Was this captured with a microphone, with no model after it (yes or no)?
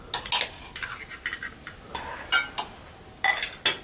yes